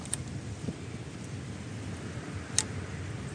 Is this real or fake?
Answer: real